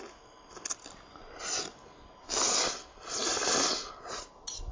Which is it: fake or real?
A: real